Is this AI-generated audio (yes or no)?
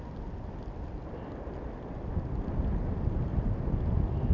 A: no